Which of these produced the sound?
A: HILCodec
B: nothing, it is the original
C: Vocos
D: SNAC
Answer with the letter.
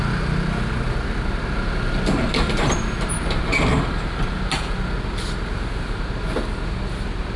B